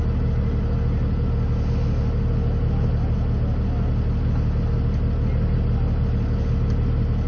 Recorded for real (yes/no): yes